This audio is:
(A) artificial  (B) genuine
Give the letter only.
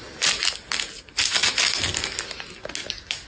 B